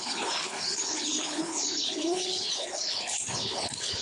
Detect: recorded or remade remade